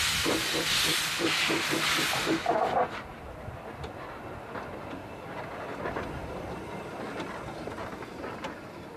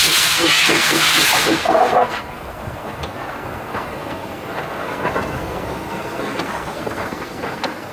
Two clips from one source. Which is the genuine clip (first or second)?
first